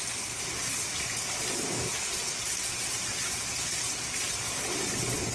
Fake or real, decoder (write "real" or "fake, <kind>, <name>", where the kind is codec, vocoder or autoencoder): real